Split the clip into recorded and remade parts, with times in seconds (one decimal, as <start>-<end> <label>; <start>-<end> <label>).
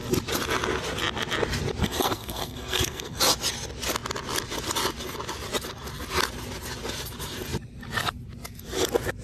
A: 0.0-1.8 recorded; 1.8-3.2 remade; 3.2-9.2 recorded